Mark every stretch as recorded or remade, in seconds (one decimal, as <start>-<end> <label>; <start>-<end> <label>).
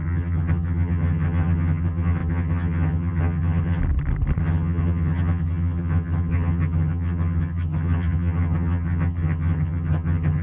0.0-3.8 remade; 3.8-4.4 recorded; 4.4-10.4 remade